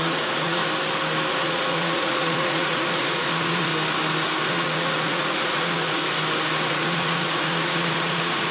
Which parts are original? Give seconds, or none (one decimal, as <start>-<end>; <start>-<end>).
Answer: 0.6-1.3; 3.7-4.5; 6.0-6.7